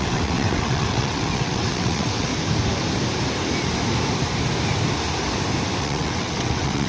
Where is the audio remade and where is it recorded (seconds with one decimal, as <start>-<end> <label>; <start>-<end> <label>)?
0.0-2.3 remade; 2.3-5.8 recorded; 5.8-6.9 remade